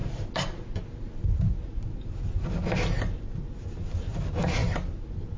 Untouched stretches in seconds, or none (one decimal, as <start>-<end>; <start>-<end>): 0.0-5.4